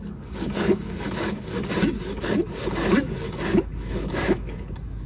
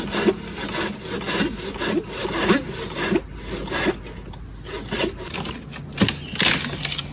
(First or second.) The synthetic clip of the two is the first